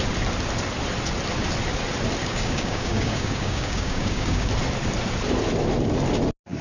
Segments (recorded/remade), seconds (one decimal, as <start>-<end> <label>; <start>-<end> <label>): 0.0-2.2 recorded; 2.2-4.5 remade; 4.5-6.6 recorded